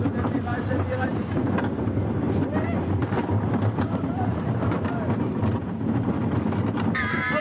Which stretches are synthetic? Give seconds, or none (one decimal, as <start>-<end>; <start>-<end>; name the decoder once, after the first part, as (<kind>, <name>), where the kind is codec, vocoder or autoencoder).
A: 0.5-1.5 (vocoder, BigVGAN v2); 3.0-6.1